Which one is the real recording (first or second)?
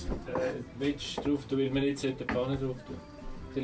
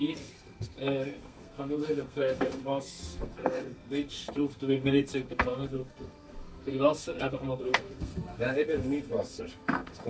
first